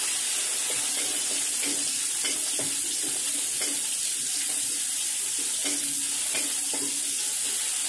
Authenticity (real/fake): real